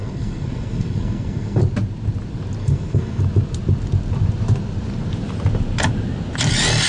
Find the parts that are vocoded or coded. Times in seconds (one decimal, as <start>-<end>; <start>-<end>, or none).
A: 0.0-1.6; 2.6-3.2